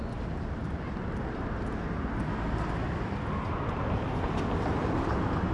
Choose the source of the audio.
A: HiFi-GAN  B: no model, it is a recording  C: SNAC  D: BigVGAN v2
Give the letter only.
B